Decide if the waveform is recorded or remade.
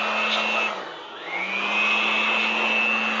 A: recorded